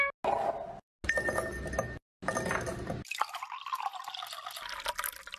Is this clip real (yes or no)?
yes